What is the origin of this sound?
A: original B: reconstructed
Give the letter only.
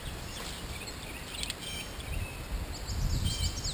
A